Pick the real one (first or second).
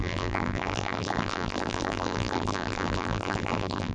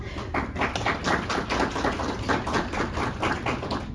second